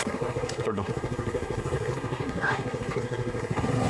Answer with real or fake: fake